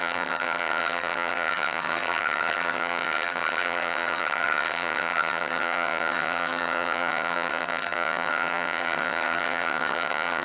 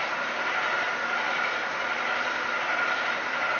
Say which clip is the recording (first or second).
second